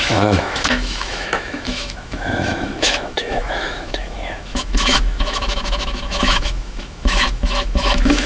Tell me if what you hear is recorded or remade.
remade